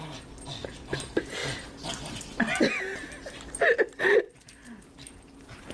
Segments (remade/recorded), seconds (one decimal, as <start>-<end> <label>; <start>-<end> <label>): 0.0-5.7 recorded